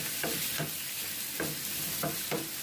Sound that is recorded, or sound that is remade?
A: recorded